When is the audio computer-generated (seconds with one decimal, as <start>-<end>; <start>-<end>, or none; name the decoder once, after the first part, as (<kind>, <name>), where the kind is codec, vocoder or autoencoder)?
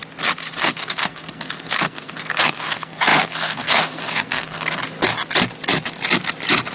0.6-4.8 (codec, SNAC)